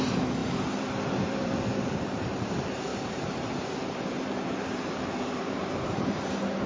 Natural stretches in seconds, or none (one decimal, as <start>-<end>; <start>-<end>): none